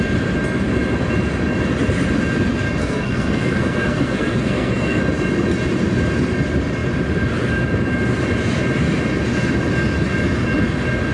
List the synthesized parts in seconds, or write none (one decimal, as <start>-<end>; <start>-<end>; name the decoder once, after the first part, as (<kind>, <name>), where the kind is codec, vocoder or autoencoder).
2.8-5.0 (codec, SNAC)